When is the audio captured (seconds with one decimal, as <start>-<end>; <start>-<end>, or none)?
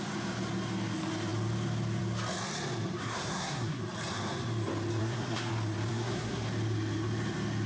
0.0-3.0; 3.8-5.0; 5.5-5.9; 6.5-7.7